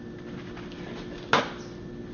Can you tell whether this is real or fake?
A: real